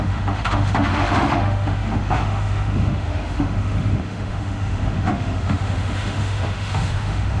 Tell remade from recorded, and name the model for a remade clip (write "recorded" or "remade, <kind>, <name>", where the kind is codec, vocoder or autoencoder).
remade, autoencoder, DAC-VAE